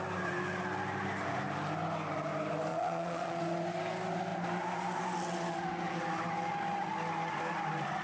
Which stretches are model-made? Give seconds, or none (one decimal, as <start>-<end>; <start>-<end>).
2.7-3.4